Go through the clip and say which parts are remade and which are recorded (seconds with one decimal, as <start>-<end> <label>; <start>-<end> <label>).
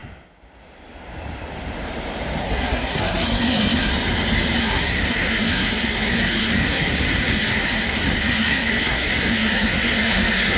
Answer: 0.0-2.4 recorded; 2.4-3.9 remade; 3.9-4.6 recorded; 4.6-10.6 remade